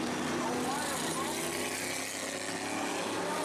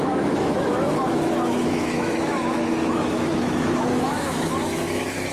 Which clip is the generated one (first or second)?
second